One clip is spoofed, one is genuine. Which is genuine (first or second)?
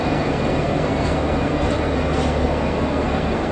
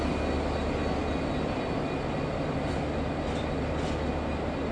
second